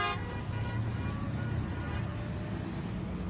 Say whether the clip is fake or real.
real